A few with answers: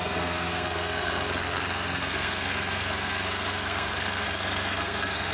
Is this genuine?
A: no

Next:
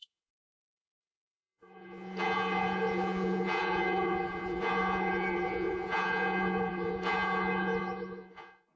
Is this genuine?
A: no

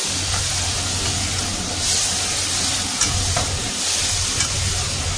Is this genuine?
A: yes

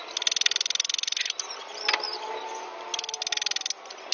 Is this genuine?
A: yes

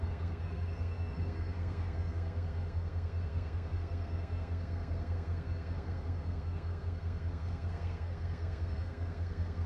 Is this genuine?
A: no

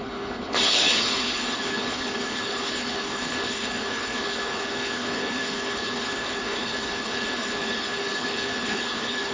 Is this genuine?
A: no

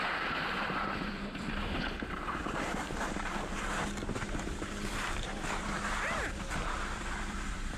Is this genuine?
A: no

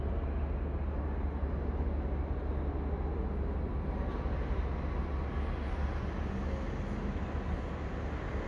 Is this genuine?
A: yes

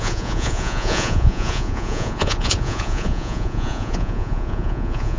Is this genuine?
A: no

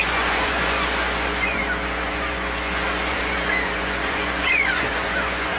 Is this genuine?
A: no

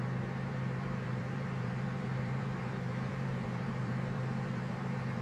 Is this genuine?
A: no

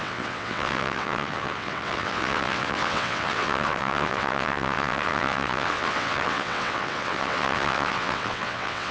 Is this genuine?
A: no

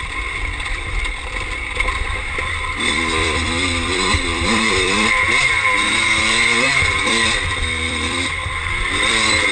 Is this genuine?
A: no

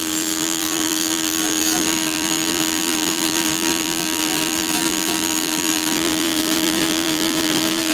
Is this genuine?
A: no